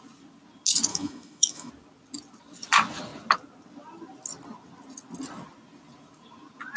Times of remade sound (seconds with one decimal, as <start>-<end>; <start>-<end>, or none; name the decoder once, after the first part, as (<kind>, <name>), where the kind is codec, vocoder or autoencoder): 0.9-1.7 (autoencoder, DAC-VAE)